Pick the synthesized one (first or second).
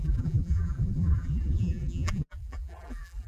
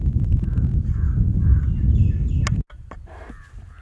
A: first